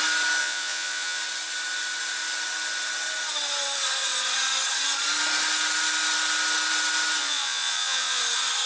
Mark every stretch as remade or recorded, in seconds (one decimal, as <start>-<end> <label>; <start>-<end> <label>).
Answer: 0.0-0.4 recorded; 0.4-1.2 remade; 1.2-7.2 recorded; 7.2-8.2 remade; 8.2-8.7 recorded